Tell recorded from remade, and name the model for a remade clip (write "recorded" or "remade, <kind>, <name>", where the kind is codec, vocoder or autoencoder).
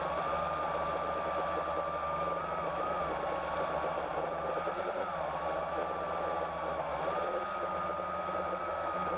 recorded